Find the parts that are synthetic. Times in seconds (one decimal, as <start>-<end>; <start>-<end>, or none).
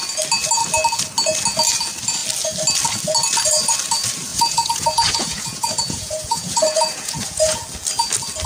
4.3-7.6